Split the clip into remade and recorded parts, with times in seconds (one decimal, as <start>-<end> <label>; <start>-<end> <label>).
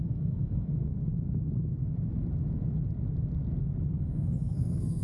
0.0-0.9 remade; 0.9-3.9 recorded; 3.9-5.0 remade